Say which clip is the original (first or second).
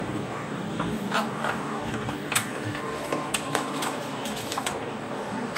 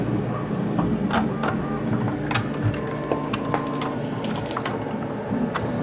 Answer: second